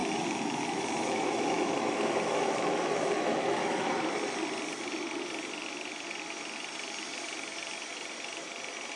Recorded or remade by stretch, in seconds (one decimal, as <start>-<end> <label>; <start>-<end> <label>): 0.0-3.9 remade; 3.9-9.0 recorded